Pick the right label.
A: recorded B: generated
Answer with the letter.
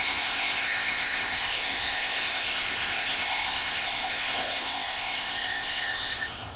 B